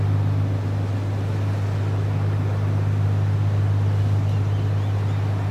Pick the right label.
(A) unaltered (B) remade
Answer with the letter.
A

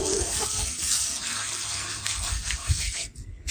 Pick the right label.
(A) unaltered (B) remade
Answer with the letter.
B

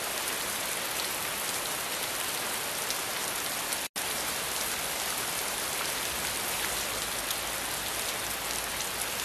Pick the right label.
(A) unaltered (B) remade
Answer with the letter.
A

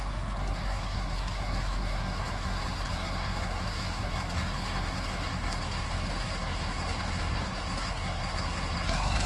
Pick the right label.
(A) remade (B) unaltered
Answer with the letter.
A